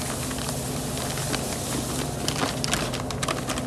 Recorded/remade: recorded